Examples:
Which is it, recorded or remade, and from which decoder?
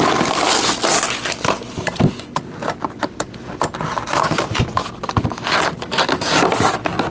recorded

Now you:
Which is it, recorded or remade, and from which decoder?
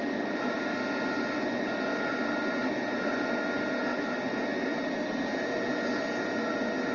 recorded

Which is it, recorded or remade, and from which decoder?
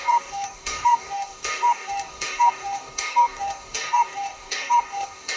remade, codec, DAC